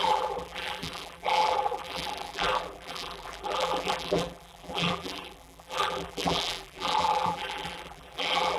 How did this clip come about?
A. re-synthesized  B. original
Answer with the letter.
A